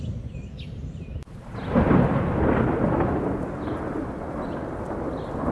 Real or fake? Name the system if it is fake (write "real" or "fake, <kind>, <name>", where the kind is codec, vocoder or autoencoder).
real